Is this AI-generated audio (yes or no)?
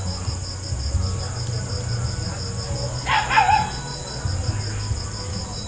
no